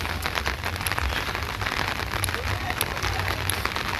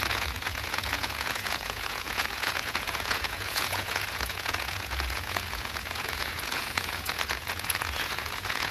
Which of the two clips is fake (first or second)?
second